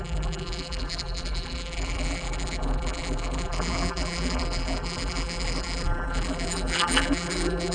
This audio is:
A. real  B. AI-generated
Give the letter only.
B